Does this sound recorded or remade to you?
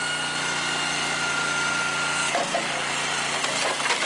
recorded